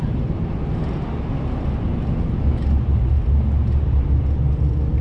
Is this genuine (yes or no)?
yes